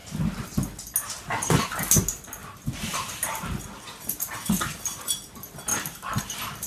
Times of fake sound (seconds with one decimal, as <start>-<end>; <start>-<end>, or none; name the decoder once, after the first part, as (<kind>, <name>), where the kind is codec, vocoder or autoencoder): 2.4-4.5 (vocoder, BigVGAN v2); 5.7-6.2

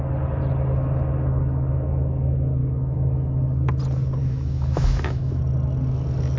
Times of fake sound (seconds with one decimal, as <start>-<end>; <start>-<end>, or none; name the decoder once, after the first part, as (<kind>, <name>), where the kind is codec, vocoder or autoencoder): 2.6-3.4 (autoencoder, DAC-VAE); 4.2-5.4

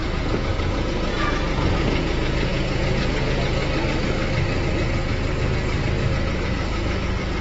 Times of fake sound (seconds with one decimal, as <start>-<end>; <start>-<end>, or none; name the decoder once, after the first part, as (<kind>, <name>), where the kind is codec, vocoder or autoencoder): 0.0-3.6 (vocoder, Vocos); 6.1-7.4

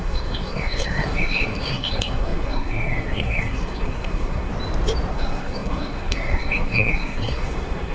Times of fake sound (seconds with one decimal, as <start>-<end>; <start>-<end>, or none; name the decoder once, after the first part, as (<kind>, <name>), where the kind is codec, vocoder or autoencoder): 0.0-4.5 (codec, SNAC); 5.1-7.9

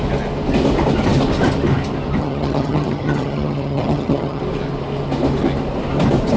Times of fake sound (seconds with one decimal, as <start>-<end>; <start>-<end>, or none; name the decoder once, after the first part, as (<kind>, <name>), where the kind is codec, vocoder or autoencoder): 2.2-4.4 (vocoder, HiFi-GAN)

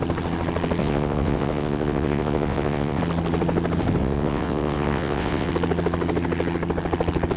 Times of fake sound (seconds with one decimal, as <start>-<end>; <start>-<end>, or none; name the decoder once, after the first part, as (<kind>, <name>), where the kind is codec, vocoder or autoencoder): 0.8-3.0 (vocoder, WaveNeXt); 4.0-5.5